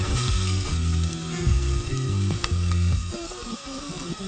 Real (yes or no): no